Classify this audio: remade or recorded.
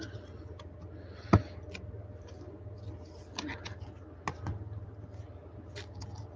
recorded